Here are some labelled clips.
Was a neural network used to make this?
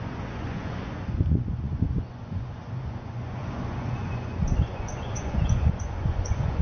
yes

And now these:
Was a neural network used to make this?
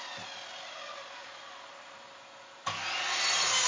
no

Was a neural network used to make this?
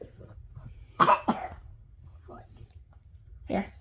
yes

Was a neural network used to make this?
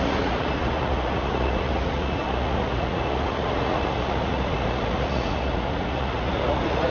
yes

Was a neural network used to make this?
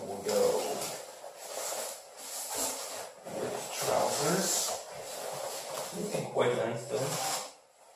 no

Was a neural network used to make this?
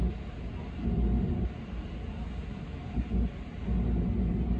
no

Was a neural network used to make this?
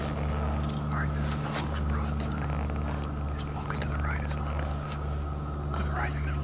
no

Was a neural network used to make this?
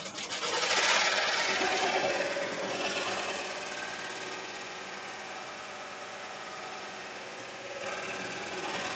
yes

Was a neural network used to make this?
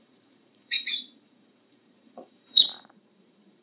yes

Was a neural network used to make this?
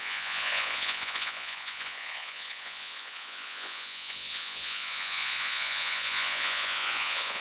yes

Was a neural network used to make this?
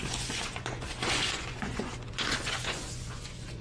yes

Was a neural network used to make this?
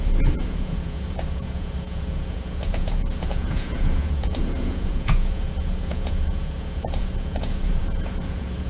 yes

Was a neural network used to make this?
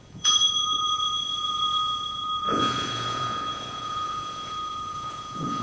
yes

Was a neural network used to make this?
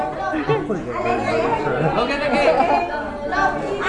no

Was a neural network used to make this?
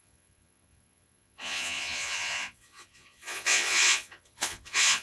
yes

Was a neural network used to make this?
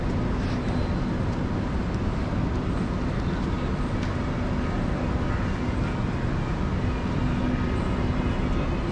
no